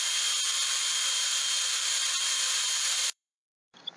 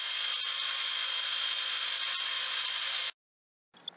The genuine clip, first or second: second